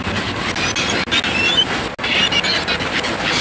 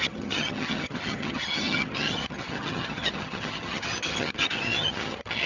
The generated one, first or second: second